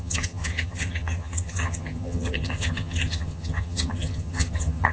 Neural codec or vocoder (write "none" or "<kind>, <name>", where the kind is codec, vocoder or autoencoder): vocoder, HiFi-GAN